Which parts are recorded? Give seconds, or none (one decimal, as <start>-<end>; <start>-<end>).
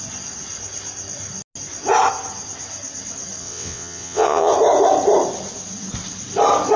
0.0-3.4; 4.5-6.8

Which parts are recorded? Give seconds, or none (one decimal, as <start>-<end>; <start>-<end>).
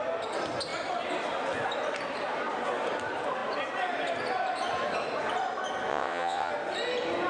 0.0-5.9; 6.5-7.3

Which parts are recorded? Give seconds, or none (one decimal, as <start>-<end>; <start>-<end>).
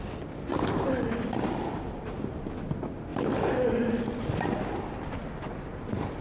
0.0-6.2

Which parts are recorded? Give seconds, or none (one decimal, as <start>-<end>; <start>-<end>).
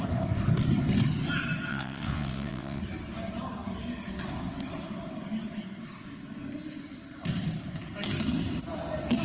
0.0-1.7; 2.8-9.2